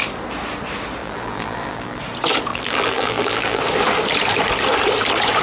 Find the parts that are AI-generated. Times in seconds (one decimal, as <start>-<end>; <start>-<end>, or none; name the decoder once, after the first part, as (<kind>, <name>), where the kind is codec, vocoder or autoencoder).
1.0-2.0 (vocoder, BigVGAN v2); 2.5-3.6